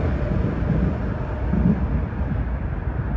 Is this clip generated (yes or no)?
no